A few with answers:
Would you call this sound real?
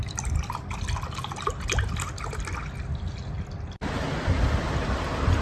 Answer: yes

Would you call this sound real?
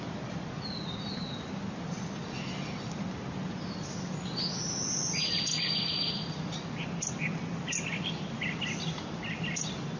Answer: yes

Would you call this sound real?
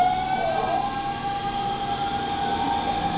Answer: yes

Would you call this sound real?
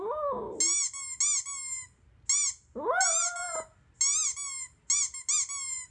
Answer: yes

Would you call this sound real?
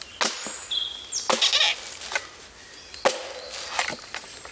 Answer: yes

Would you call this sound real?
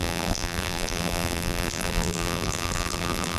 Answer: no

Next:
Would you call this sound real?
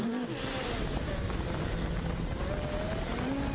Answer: yes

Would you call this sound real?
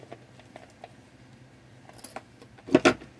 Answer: yes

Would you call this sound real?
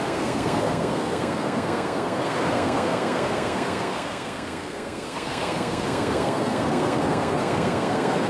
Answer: no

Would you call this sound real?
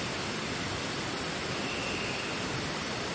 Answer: yes